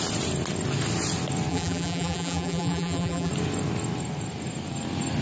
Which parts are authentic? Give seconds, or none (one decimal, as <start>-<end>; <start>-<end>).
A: 0.0-1.5; 3.3-5.2